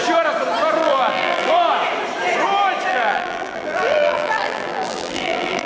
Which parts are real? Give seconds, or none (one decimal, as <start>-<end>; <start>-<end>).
0.0-0.8; 1.5-2.9